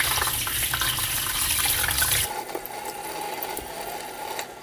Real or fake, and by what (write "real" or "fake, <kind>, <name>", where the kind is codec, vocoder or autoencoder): real